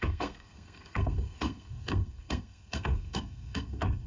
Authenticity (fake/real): fake